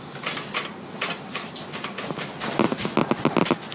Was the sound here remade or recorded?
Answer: recorded